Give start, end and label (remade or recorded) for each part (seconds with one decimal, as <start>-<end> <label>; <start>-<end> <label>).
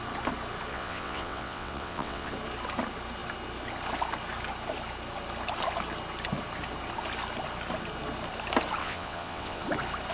0.0-0.7 recorded; 0.7-2.3 remade; 2.3-8.8 recorded; 8.8-9.6 remade; 9.6-10.1 recorded